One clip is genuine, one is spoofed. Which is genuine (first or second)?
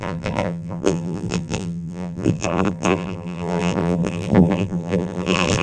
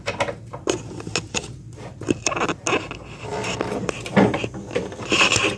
second